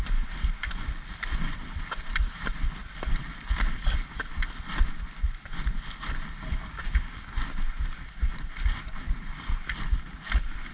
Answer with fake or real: real